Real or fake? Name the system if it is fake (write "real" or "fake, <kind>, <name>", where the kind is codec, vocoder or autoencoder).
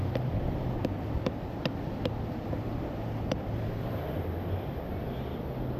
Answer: real